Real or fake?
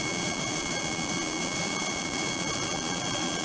fake